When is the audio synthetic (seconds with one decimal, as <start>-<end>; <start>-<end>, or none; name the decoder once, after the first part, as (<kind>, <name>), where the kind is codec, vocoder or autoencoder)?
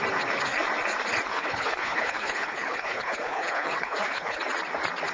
1.3-4.4 (codec, HILCodec)